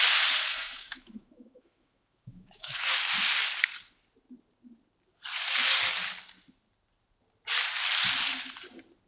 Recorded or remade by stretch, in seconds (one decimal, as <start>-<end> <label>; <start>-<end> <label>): 0.0-0.5 recorded; 0.5-3.0 remade; 3.0-9.1 recorded